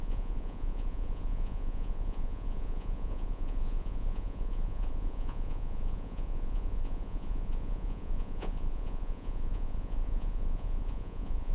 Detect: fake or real fake